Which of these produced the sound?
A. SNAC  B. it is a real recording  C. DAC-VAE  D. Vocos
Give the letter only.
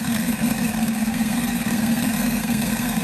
A